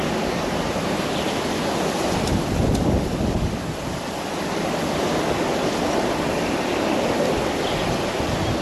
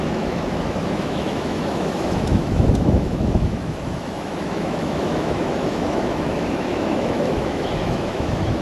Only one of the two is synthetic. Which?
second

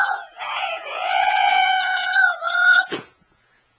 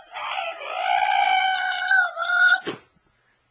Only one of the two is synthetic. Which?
first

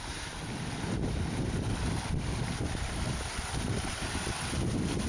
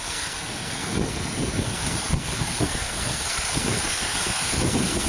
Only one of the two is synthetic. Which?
second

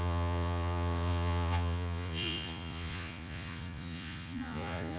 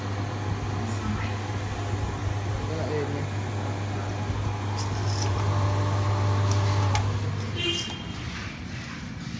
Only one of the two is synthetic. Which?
first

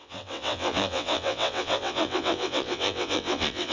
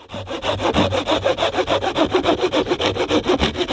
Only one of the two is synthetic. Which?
first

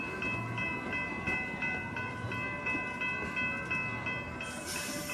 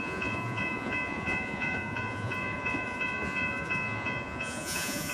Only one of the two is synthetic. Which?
second